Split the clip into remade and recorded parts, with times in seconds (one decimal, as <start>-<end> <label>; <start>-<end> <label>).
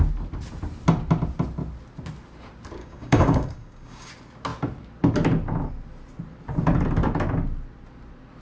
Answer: 0.0-2.8 recorded; 2.8-4.1 remade; 4.1-8.4 recorded